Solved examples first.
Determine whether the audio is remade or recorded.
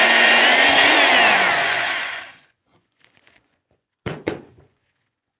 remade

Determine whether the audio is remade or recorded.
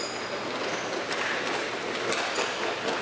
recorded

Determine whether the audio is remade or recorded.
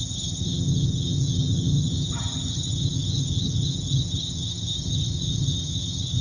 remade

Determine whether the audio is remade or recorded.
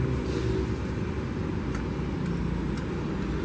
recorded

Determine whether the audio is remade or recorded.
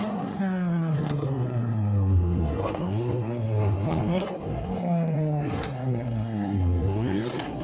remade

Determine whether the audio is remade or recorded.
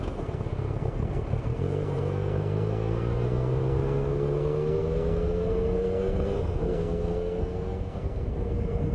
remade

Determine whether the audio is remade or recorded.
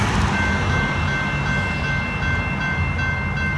recorded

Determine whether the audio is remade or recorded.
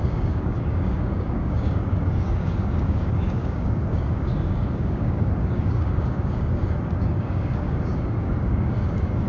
remade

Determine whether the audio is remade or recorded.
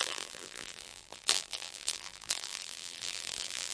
remade